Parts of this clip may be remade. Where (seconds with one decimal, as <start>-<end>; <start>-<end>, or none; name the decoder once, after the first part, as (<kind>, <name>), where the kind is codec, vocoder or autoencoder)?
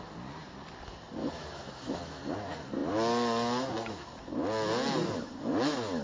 1.2-2.2 (autoencoder, DAC-VAE)